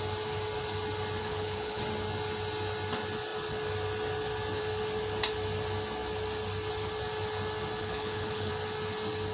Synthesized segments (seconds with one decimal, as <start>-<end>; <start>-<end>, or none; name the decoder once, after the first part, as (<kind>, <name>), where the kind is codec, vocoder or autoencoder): 1.2-1.8 (codec, HILCodec); 7.8-8.5